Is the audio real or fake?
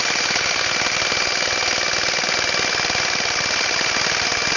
real